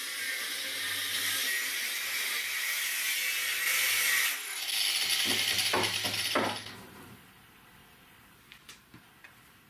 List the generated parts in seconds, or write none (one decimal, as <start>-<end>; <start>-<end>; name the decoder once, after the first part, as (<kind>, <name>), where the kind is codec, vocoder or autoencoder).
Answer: none